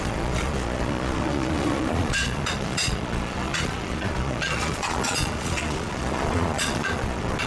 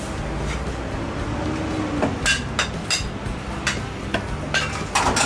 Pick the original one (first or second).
second